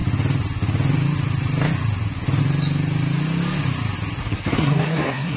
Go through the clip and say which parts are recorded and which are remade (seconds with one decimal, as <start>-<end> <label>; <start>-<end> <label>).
0.0-4.2 recorded; 4.2-5.4 remade